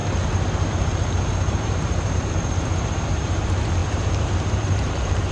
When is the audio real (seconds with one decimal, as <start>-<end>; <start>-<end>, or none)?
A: 0.0-1.6